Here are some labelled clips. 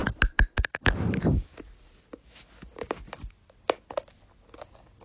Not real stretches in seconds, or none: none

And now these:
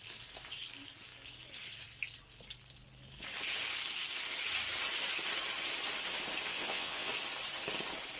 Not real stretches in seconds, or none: 6.5-7.1 (vocoder, WaveNeXt)

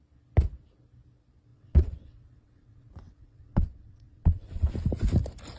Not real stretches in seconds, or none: 1.5-4.7 (vocoder, WaveNeXt)

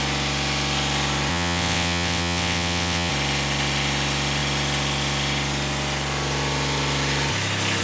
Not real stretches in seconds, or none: 1.3-3.1 (vocoder, WaveNeXt)

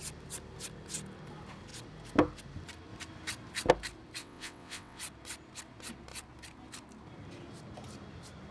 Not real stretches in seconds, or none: 4.2-5.0 (vocoder, WaveNeXt)

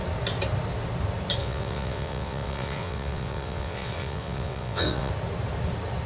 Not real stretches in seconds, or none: 1.4-5.1 (vocoder, WaveNeXt)